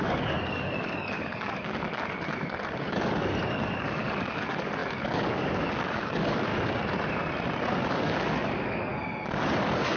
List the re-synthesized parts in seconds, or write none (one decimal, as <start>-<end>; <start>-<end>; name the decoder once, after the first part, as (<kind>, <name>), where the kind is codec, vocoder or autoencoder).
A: 0.0-6.5 (codec, DAC); 7.8-8.9; 9.6-10.0